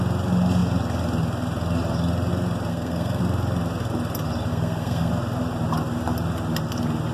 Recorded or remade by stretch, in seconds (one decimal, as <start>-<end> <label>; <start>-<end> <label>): 0.0-2.7 recorded; 2.7-3.2 remade; 3.2-4.5 recorded; 4.5-5.1 remade; 5.1-7.1 recorded